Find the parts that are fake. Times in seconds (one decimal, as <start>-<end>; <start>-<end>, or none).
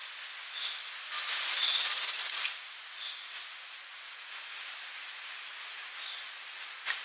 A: none